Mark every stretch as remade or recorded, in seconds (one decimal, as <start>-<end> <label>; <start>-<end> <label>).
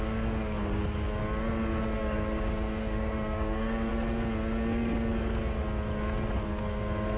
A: 0.0-1.2 remade; 1.2-2.0 recorded; 2.0-3.9 remade; 3.9-6.6 recorded; 6.6-7.2 remade